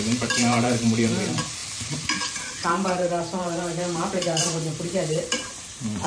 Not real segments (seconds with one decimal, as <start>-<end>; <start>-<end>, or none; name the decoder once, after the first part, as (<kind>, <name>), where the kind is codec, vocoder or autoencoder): 0.0-6.1 (vocoder, BigVGAN v2)